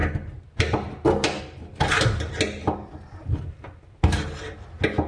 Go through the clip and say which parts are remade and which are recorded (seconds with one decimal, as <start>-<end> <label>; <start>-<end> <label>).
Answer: 0.0-5.1 recorded